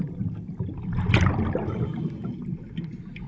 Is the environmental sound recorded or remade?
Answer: remade